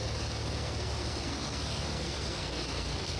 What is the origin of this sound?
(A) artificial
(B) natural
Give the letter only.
A